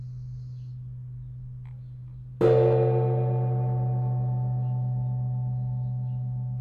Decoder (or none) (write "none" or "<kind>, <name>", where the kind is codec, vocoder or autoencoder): none